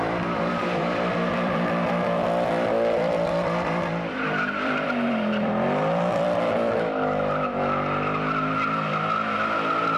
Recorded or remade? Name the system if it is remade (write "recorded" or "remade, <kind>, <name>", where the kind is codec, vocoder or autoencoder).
remade, vocoder, BigVGAN v2